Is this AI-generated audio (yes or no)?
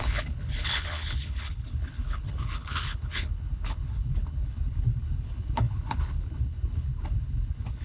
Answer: yes